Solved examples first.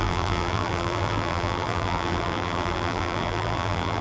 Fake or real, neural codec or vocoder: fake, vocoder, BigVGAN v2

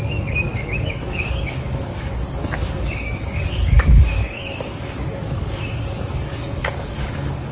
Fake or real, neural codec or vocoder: fake, codec, DAC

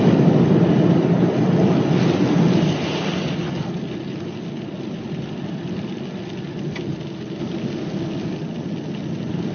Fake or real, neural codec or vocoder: real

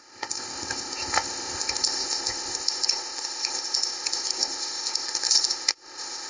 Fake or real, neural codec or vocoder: fake, codec, ZipCodec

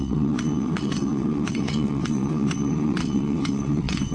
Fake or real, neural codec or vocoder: fake, vocoder, WaveNeXt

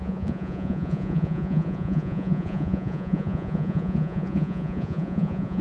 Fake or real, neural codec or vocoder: fake, vocoder, Vocos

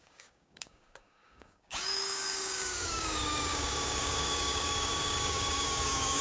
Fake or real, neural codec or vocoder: fake, codec, DAC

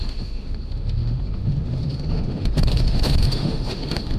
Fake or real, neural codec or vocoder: fake, autoencoder, DAC-VAE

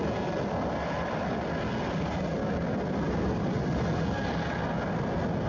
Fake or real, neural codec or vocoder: real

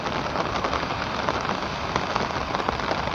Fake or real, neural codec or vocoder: real